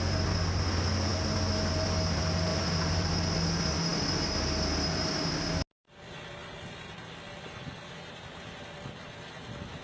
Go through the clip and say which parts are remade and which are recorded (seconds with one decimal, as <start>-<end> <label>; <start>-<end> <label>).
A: 0.0-2.5 recorded; 2.5-3.2 remade; 3.2-9.8 recorded